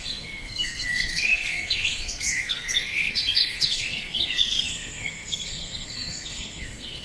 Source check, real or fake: fake